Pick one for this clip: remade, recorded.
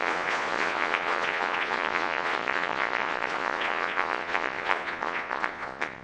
remade